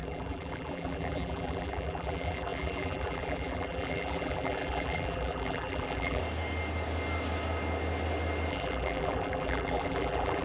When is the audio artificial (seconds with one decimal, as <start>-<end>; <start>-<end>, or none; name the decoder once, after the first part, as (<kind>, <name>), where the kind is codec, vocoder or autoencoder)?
0.0-6.2 (vocoder, BigVGAN v2); 8.5-10.4